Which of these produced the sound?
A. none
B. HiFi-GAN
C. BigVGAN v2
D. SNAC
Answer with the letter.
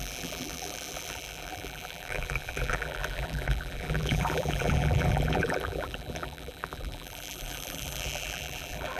C